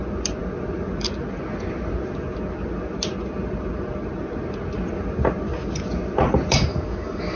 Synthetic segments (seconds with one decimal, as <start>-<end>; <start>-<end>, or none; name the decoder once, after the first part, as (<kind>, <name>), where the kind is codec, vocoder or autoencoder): 6.7-7.4 (codec, DAC)